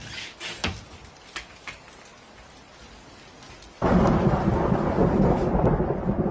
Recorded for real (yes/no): yes